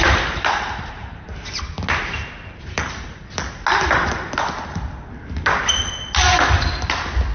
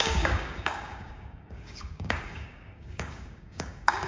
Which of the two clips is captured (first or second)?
first